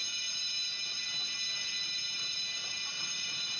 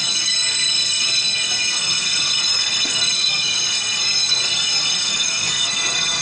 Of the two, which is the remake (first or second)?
second